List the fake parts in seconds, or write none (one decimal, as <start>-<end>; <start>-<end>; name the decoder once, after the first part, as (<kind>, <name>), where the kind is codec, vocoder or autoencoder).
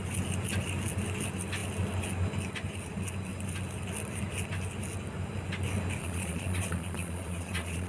6.0-7.9 (vocoder, Vocos)